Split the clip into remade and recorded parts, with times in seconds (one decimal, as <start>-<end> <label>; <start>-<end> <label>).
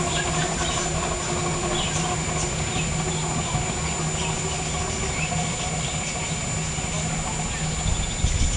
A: 0.0-8.6 recorded